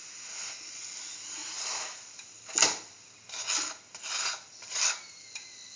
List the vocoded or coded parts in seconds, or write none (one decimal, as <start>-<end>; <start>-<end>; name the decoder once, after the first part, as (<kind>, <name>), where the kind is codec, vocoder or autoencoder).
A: none

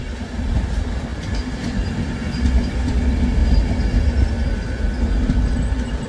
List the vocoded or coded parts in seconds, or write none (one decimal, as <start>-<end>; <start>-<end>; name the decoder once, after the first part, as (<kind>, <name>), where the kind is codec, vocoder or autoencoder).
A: none

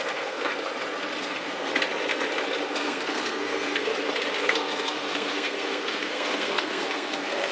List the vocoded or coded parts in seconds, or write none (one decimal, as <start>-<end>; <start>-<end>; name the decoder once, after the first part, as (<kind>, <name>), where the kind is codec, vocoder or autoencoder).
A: 0.0-0.5 (codec, SNAC); 1.2-1.7; 2.7-3.9; 4.4-7.5

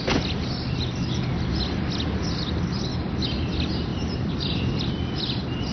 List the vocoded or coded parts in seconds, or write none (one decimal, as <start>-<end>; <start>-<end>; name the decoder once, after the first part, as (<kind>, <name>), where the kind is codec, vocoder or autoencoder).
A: 3.9-4.8 (vocoder, BigVGAN v2)

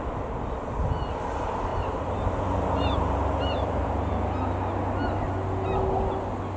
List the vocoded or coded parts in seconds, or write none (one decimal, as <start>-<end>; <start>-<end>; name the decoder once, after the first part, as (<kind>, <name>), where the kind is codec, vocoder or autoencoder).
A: 1.7-4.1 (vocoder, BigVGAN v2)

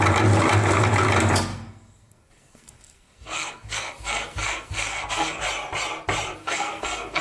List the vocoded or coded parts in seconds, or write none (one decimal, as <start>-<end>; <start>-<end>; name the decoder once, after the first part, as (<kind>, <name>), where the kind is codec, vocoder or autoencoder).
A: 1.5-5.4 (codec, SNAC); 6.4-7.2

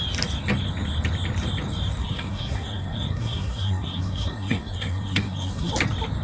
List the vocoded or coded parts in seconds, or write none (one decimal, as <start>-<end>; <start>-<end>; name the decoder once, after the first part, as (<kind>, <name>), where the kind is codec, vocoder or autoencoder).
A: 2.0-5.7 (codec, SNAC)

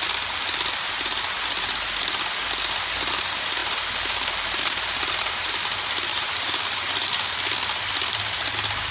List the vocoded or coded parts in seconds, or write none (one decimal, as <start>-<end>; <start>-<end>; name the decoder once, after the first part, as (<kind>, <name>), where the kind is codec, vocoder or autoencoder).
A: 3.6-5.5 (vocoder, BigVGAN v2); 6.1-6.8